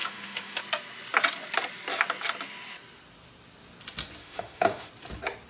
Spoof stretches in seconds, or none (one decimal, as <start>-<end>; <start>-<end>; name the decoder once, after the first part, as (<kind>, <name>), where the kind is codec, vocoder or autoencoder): 0.0-0.6 (autoencoder, DAC-VAE); 4.2-4.9